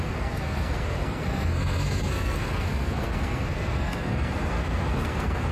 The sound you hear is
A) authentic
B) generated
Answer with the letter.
B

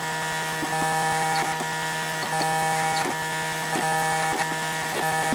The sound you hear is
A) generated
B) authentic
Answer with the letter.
B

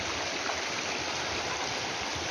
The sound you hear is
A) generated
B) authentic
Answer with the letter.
B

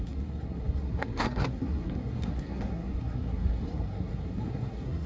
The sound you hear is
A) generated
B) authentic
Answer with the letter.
A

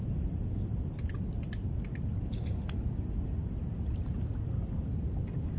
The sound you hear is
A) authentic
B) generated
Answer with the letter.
A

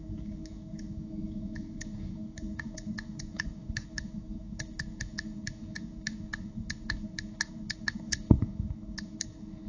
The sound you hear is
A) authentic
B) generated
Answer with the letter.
B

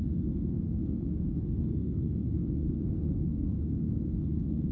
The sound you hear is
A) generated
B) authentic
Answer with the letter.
A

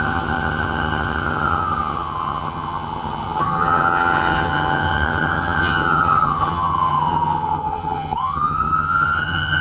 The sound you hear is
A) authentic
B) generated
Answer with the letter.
B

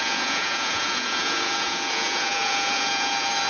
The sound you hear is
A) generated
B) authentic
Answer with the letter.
A